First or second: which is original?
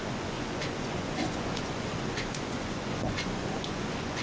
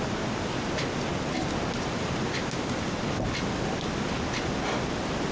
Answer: second